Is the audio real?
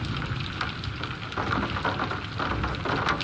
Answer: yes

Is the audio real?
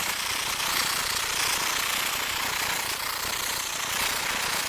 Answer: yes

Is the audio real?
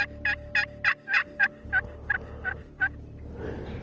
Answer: yes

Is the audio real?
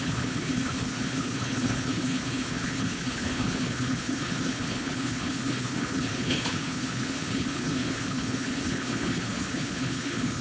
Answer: no